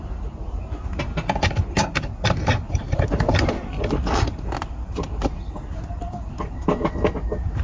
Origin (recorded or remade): recorded